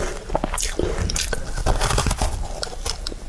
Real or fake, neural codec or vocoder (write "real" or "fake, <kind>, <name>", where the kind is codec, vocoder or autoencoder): real